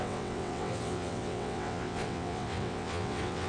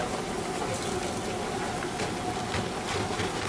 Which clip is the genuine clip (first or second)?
second